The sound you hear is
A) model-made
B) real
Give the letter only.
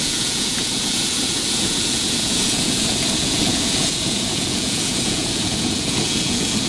A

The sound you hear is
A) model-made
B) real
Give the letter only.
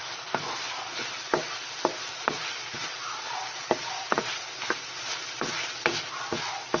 B